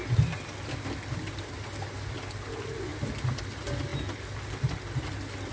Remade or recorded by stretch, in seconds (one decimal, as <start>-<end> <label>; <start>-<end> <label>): 0.0-5.5 recorded